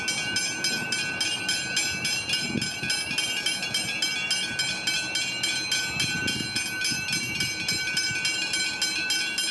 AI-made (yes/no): no